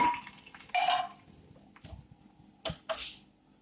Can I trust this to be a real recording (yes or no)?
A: yes